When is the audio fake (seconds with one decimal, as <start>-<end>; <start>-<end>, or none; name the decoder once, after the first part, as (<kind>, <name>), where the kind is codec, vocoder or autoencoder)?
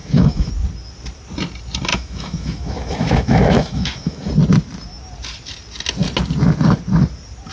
0.0-0.5 (autoencoder, DAC-VAE); 1.9-4.3